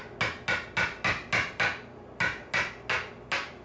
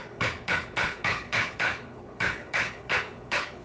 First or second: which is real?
first